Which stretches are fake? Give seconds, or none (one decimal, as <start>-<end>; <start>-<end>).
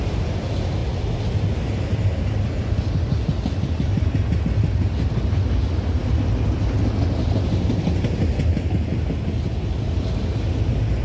none